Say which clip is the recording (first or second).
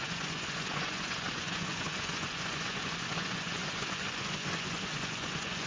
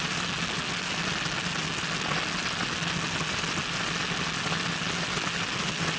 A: second